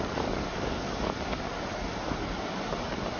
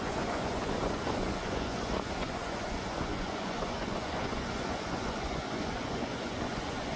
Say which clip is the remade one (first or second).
second